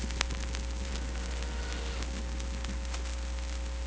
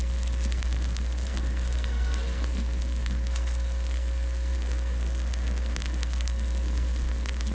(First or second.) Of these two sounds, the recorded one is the first